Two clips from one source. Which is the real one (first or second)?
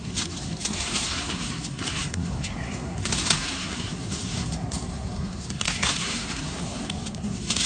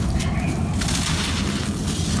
second